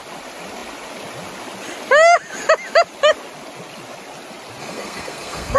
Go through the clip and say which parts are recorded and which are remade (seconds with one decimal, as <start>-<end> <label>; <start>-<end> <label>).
0.0-4.6 recorded; 4.6-5.6 remade